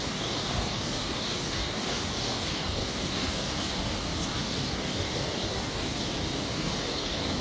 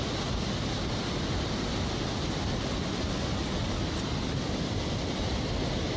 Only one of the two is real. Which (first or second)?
second